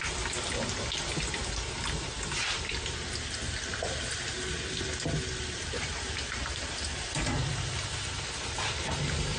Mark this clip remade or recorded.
recorded